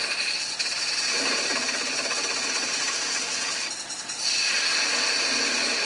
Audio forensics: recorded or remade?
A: recorded